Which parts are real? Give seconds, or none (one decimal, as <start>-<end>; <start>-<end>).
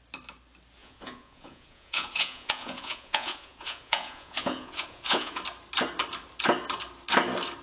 0.0-0.8; 5.4-7.6